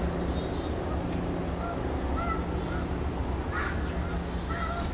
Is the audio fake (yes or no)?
no